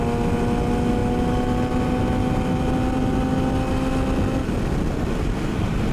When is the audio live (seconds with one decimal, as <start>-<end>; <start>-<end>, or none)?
0.0-5.9